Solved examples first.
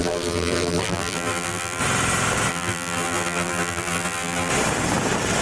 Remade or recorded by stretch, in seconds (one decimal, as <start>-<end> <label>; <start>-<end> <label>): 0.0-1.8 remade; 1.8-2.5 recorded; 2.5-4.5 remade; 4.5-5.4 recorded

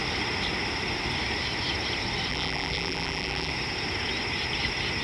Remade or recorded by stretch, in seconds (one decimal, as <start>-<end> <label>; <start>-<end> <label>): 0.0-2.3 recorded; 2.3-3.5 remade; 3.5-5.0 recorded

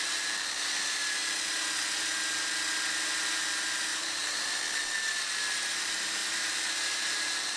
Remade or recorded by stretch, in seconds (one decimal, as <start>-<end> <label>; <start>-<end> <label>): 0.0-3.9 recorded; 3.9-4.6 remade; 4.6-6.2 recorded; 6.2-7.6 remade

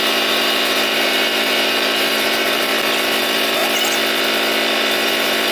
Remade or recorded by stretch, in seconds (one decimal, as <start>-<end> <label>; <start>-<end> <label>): 0.0-2.7 remade; 2.7-3.2 recorded; 3.2-3.6 remade; 3.6-4.8 recorded; 4.8-5.5 remade

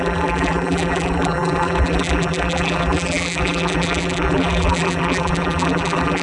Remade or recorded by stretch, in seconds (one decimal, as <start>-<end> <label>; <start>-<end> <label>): 0.0-6.2 remade